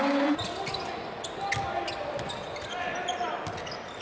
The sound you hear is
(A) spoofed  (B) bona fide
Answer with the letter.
B